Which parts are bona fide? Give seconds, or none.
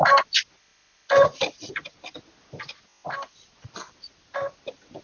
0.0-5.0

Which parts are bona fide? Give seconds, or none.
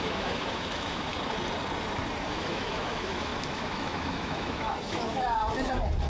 1.1-2.2; 5.4-6.1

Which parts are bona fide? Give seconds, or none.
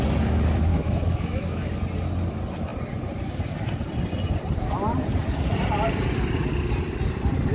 0.0-0.7; 1.7-7.5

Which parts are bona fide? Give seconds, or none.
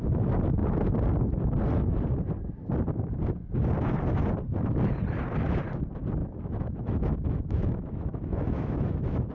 0.0-6.2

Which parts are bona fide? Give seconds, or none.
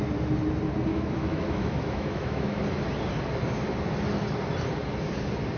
0.0-0.9; 2.6-5.6